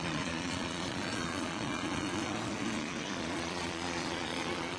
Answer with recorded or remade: remade